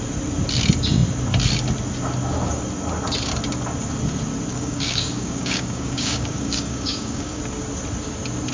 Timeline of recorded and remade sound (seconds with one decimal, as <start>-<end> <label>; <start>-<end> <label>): 0.0-4.5 recorded; 4.5-7.4 remade; 7.4-8.5 recorded